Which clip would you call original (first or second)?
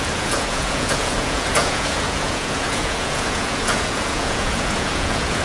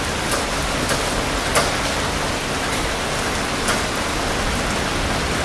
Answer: second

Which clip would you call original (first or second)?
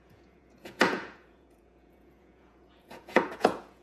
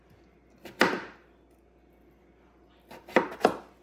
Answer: second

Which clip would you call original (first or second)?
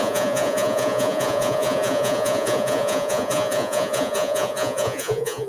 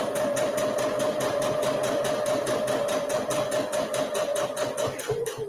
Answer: second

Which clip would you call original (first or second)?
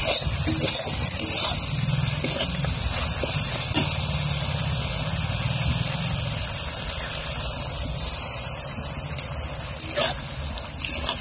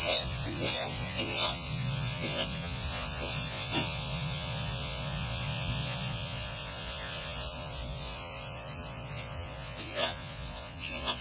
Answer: first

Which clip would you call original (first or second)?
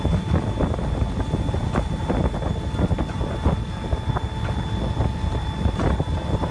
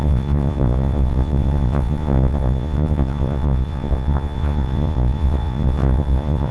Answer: first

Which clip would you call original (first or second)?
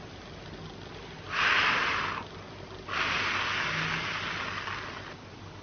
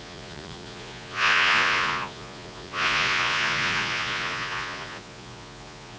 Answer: first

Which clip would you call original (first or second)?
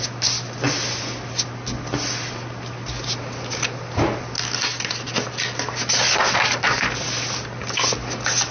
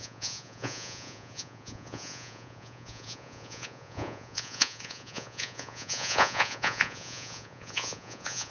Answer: first